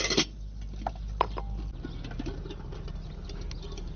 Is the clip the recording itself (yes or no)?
yes